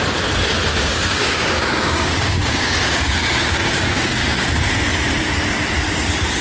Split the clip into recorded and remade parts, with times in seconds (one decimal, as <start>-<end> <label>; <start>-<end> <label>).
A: 0.0-0.7 recorded; 0.7-4.5 remade; 4.5-6.4 recorded